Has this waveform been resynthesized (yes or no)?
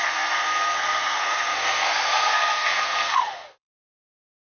yes